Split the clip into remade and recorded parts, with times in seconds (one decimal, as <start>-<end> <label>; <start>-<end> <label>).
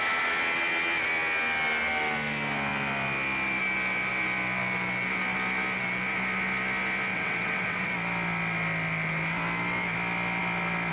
0.0-7.1 recorded; 7.1-7.9 remade; 7.9-10.9 recorded